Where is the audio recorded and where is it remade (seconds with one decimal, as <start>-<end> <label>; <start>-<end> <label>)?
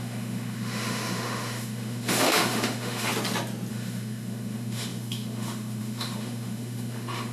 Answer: 0.0-3.1 remade; 3.1-3.7 recorded; 3.7-7.3 remade